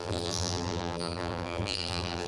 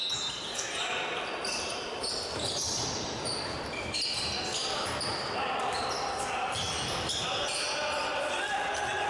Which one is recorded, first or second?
second